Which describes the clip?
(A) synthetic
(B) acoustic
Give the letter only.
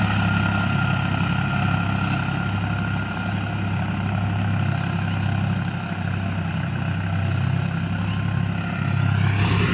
B